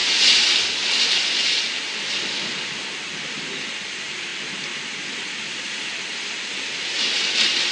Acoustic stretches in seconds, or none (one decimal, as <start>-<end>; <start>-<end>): 0.0-7.7